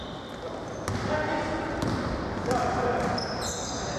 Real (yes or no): yes